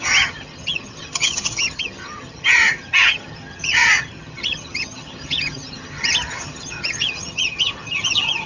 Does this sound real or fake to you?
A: fake